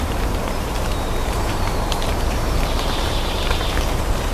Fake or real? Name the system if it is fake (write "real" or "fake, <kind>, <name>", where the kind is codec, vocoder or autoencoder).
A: fake, vocoder, BigVGAN v2